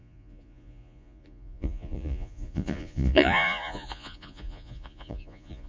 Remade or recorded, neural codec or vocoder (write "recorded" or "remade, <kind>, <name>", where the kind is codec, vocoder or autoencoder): remade, vocoder, Vocos